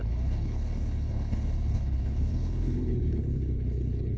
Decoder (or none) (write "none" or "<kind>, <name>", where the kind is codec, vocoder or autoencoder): codec, HILCodec